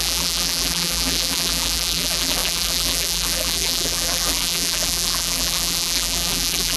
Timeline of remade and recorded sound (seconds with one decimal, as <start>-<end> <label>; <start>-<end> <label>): 0.0-6.8 remade